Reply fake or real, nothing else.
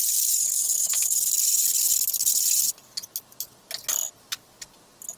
real